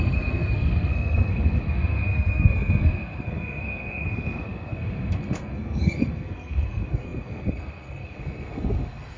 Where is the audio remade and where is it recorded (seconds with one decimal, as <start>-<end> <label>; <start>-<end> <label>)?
0.0-9.2 remade